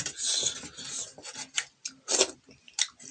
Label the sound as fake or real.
real